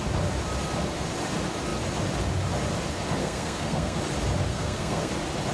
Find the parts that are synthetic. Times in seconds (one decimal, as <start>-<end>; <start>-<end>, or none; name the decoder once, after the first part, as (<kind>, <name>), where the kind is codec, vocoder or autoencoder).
3.2-4.0 (codec, SNAC); 4.5-5.1